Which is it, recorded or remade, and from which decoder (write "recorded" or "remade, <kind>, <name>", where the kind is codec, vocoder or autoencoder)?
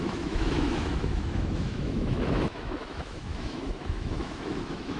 remade, autoencoder, DAC-VAE